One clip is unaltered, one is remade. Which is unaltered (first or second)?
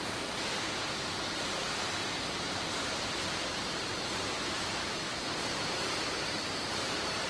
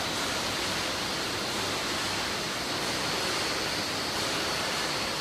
second